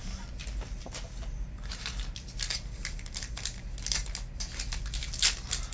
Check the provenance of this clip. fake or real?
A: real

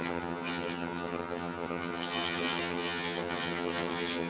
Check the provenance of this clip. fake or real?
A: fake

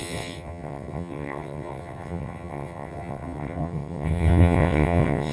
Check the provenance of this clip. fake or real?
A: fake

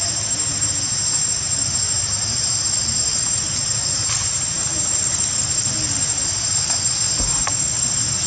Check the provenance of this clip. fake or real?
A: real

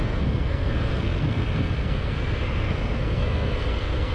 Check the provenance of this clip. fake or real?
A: fake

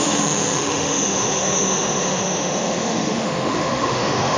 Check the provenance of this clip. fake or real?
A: fake